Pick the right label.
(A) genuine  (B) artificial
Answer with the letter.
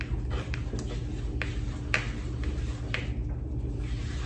A